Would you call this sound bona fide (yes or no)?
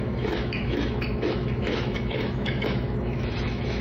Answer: no